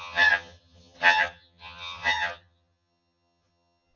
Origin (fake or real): fake